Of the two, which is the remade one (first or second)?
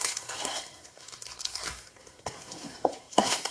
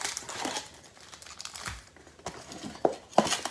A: first